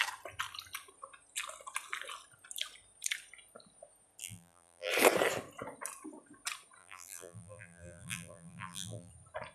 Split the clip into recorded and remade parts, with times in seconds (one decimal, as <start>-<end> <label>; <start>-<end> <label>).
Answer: 0.0-4.2 recorded; 4.2-4.9 remade; 4.9-6.8 recorded; 6.8-9.1 remade; 9.1-9.5 recorded